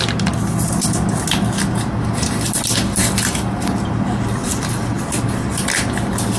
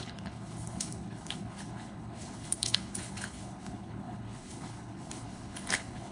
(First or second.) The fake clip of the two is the second